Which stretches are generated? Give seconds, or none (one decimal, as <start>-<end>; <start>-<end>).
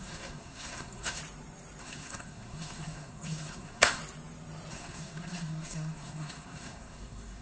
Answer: 0.0-1.2; 1.8-4.0; 4.7-7.4